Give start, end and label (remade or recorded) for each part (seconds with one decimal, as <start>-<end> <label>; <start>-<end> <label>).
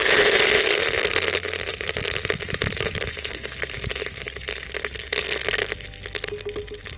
0.0-1.7 recorded; 1.7-5.1 remade; 5.1-7.0 recorded